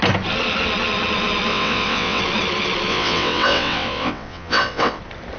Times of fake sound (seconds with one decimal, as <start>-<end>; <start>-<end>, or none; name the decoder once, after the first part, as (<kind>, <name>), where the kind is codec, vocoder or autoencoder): 1.5-2.2 (vocoder, WaveNeXt); 2.9-5.0